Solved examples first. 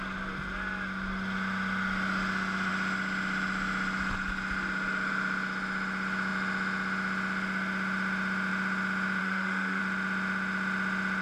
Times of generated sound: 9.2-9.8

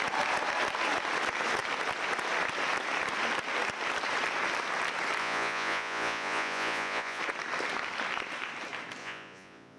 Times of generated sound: 5.2-7.2; 9.0-9.8